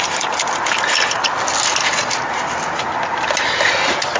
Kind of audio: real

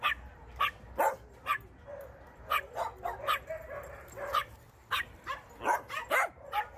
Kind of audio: real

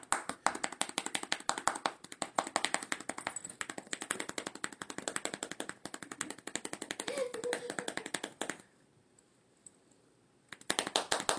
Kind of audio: real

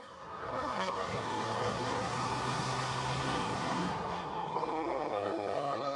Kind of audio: fake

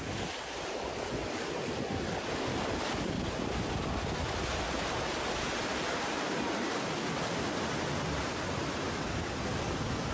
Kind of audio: real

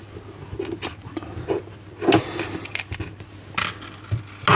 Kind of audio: real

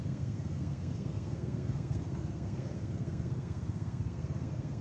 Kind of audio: fake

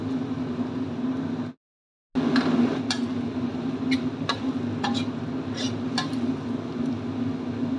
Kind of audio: real